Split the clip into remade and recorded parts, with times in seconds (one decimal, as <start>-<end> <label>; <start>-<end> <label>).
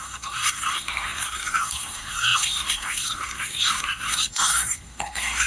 0.0-5.5 remade